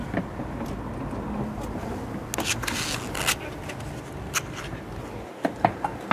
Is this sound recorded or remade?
recorded